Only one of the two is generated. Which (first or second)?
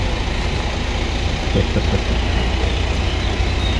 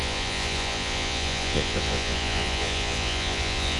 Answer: second